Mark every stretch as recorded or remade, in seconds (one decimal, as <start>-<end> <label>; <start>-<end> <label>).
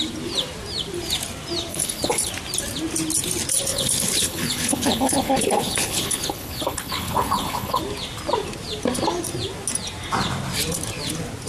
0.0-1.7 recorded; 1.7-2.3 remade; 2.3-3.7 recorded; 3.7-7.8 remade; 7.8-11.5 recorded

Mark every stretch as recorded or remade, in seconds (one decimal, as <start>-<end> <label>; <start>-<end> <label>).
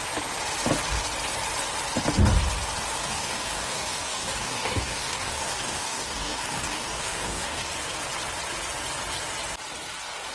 0.0-3.0 recorded; 3.0-7.7 remade; 7.7-10.3 recorded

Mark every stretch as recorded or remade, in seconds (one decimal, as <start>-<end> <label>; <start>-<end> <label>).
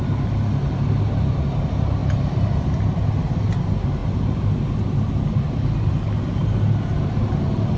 0.0-7.8 recorded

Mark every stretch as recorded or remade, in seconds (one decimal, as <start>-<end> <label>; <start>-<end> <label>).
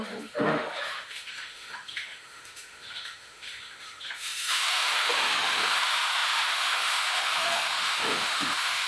0.0-8.9 remade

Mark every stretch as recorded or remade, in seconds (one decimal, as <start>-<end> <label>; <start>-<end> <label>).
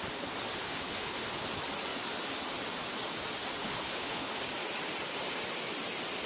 0.0-0.6 recorded; 0.6-1.3 remade; 1.3-3.6 recorded; 3.6-4.4 remade; 4.4-6.3 recorded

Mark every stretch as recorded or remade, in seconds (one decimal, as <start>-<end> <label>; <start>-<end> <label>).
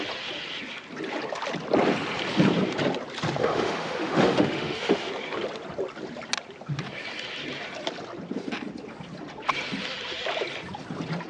0.0-3.4 recorded; 3.4-5.1 remade; 5.1-11.3 recorded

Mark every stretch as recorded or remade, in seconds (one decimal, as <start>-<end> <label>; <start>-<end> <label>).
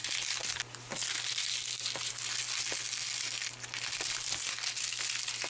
0.0-5.5 recorded